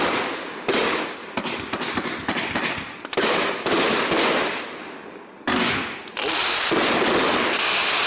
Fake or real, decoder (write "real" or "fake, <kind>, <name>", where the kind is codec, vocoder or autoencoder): real